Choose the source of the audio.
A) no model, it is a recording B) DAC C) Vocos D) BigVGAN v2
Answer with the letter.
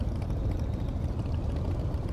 D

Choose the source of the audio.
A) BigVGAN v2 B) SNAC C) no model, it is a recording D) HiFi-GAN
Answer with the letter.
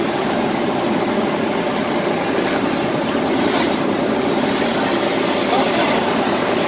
A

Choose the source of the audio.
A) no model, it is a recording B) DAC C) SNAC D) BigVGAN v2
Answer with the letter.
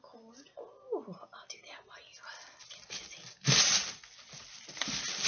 A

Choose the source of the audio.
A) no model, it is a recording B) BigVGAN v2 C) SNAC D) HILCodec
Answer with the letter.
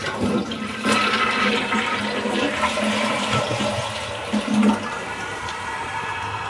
B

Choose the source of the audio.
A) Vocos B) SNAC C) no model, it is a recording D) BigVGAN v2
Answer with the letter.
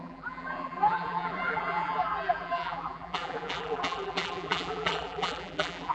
D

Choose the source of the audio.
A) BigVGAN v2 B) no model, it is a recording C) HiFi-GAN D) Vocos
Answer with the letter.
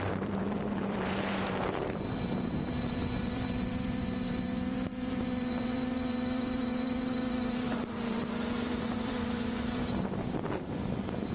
A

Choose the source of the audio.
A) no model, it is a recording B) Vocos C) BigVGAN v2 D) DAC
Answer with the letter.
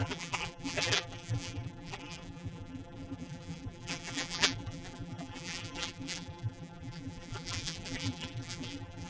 C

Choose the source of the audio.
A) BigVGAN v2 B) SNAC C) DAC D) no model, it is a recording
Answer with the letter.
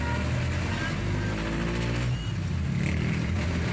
D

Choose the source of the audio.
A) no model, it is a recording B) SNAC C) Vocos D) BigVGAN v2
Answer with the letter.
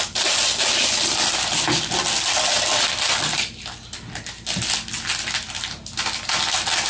A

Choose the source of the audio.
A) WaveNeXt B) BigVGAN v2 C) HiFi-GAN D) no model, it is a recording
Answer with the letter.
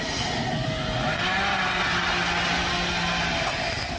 D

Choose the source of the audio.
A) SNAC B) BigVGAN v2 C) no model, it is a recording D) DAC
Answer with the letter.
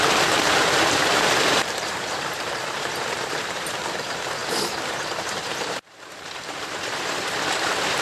B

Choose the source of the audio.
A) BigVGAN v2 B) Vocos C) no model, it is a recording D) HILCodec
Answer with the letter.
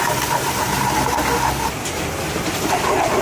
A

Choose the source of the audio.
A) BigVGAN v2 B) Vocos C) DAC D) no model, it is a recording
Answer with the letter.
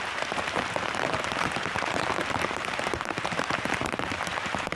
A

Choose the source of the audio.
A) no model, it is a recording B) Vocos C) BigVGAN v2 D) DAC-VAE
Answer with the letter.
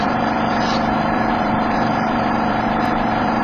C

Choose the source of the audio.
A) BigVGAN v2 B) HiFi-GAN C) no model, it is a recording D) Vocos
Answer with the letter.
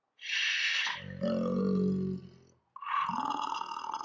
C